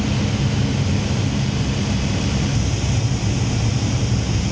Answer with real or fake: real